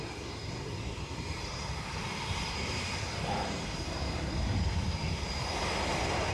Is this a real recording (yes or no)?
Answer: no